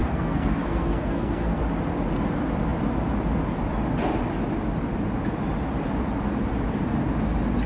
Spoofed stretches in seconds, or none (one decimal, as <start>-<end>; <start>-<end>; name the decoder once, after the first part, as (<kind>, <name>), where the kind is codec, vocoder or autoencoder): 0.0-1.6 (codec, SNAC)